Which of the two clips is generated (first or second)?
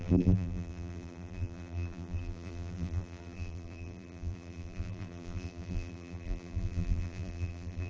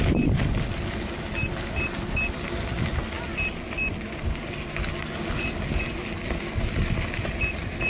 first